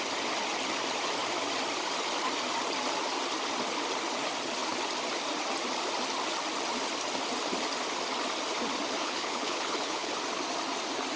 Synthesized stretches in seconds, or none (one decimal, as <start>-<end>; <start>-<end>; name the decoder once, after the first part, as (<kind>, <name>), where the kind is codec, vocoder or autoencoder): 9.0-10.1 (codec, HILCodec)